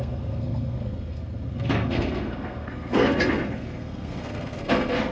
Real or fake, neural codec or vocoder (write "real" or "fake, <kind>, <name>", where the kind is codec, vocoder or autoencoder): fake, codec, SNAC